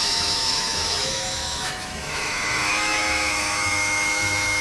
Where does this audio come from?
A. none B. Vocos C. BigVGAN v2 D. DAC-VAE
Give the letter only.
D